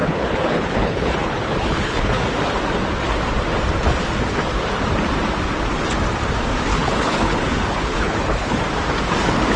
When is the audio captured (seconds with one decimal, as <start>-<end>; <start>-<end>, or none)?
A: 2.2-6.7; 8.6-9.6

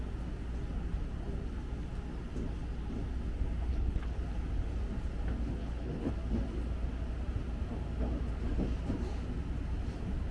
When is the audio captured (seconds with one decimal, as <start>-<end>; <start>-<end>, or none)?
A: 0.0-3.7; 4.2-5.6; 6.1-10.3